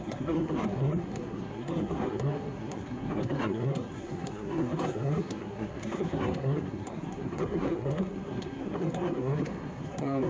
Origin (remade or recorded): remade